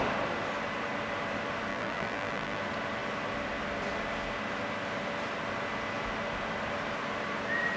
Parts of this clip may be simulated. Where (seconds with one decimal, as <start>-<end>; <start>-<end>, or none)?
1.7-2.6